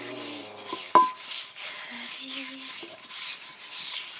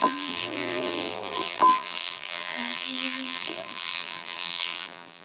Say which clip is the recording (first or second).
first